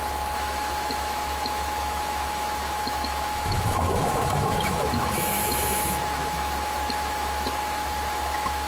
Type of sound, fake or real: fake